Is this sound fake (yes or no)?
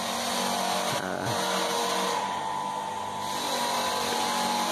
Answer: no